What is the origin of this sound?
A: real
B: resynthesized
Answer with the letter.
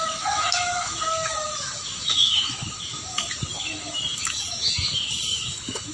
B